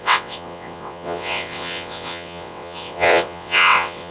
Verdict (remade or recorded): remade